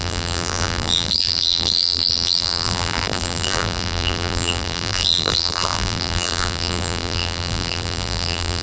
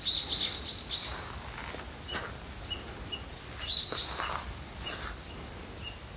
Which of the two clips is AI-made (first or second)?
first